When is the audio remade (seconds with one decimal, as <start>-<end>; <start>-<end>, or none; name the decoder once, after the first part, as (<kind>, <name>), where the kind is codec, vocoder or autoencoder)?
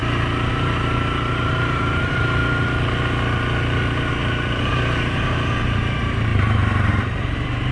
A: 0.5-2.4 (vocoder, BigVGAN v2); 4.6-7.7